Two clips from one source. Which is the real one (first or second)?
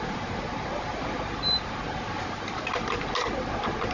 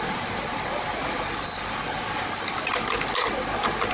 second